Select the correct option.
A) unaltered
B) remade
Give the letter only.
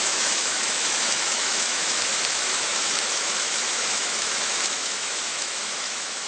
B